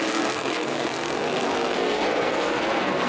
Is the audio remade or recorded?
remade